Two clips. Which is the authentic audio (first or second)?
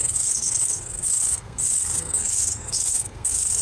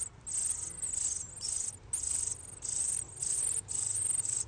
second